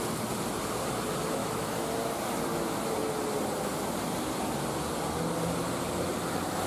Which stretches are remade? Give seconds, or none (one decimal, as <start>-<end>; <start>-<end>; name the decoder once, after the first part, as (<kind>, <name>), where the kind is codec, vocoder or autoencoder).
1.4-1.9 (autoencoder, DAC-VAE)